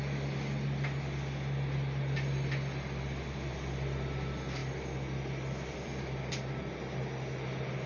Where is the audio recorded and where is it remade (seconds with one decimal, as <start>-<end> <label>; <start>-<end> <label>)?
0.0-4.6 recorded; 4.6-6.0 remade; 6.0-7.9 recorded